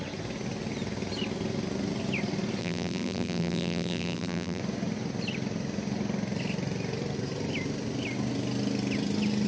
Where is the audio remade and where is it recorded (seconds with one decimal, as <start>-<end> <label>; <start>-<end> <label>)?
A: 0.0-2.6 recorded; 2.6-4.6 remade; 4.6-9.5 recorded